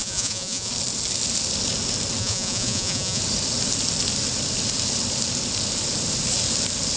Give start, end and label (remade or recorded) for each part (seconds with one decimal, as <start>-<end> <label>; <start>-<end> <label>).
0.0-0.7 remade; 0.7-2.2 recorded; 2.2-3.2 remade; 3.2-7.0 recorded